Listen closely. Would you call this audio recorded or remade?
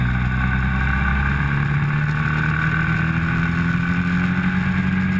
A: recorded